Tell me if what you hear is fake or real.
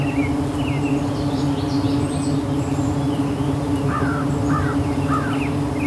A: real